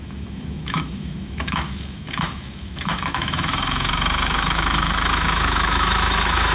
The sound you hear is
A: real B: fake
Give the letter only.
B